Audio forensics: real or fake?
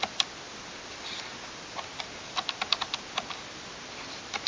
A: real